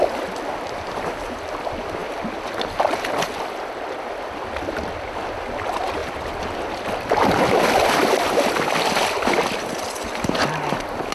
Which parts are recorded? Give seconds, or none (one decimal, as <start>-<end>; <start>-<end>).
0.0-11.1